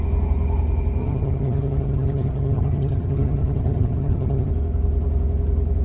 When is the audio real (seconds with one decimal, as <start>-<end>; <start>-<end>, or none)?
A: 0.0-1.0; 4.5-5.8